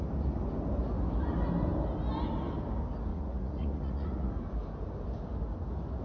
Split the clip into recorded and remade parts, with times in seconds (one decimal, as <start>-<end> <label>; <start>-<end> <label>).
0.0-3.1 recorded; 3.1-4.3 remade; 4.3-6.0 recorded